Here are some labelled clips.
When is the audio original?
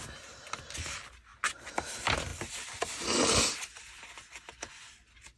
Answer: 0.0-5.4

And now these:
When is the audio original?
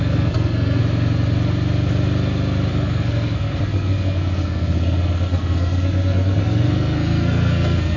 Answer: 0.8-2.7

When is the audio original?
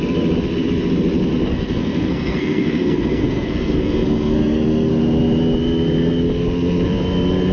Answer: 0.0-1.5; 4.9-7.5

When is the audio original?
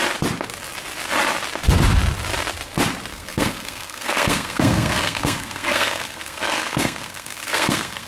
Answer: 0.0-3.1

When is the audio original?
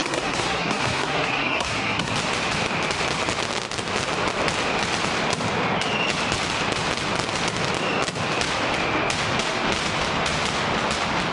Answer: 2.1-11.3